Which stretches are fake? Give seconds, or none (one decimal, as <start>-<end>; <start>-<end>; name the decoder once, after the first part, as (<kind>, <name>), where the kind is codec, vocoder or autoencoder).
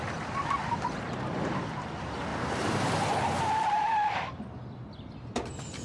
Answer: 0.6-1.2 (vocoder, BigVGAN v2); 2.3-2.9